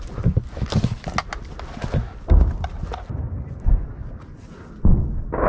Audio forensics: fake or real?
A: real